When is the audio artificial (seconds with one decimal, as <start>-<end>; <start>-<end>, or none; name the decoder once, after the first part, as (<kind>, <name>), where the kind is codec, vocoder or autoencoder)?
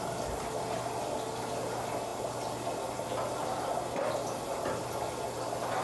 none